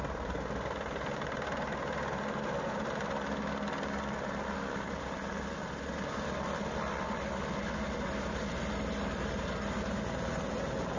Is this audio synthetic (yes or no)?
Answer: no